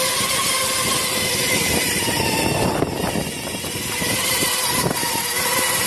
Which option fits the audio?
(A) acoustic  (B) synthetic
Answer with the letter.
A